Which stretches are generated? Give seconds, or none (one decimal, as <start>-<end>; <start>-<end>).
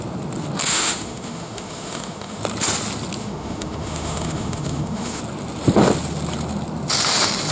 0.7-2.4; 3.2-5.2